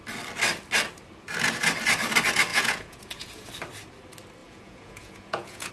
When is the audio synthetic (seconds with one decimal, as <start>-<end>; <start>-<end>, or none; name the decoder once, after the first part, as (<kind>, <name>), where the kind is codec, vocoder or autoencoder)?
2.5-3.5 (vocoder, Vocos); 4.4-5.7